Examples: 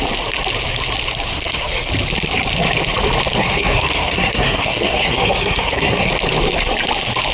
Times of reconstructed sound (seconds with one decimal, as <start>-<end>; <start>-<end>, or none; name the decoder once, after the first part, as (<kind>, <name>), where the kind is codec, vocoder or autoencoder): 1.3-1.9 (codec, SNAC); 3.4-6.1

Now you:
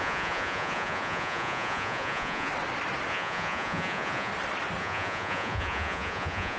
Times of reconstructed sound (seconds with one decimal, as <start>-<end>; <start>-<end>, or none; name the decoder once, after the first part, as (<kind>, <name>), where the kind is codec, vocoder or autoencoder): 0.0-2.5 (vocoder, Vocos); 3.1-4.3; 4.8-6.6

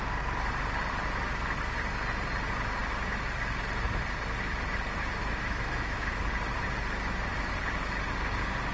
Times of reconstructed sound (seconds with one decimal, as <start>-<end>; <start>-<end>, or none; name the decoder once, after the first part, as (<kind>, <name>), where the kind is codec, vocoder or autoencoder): 5.2-6.1 (autoencoder, DAC-VAE)

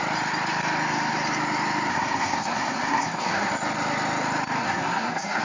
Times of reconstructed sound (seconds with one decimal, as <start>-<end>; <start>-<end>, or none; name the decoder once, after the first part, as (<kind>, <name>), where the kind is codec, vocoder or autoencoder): 1.9-3.5 (codec, SNAC); 4.6-5.4

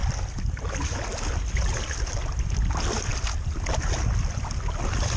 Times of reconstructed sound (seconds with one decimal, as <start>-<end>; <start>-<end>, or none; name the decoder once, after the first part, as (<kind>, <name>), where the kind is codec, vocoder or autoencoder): none

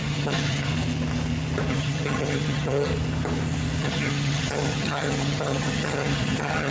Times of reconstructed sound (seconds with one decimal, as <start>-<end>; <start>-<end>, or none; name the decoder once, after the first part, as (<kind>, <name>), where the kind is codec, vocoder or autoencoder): 0.0-0.7 (vocoder, HiFi-GAN); 1.7-2.9; 3.8-6.7